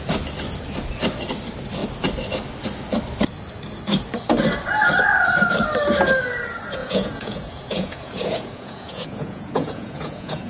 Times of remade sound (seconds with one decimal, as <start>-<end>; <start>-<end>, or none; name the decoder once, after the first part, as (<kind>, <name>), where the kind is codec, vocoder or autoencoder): 6.8-10.5 (vocoder, Vocos)